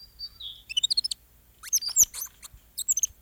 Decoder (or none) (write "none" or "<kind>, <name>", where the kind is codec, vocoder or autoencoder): vocoder, BigVGAN v2